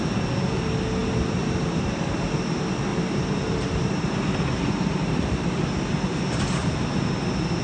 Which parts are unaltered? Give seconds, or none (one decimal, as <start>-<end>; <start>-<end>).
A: 0.0-2.9; 5.7-7.6